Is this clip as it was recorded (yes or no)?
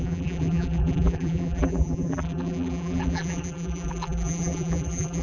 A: no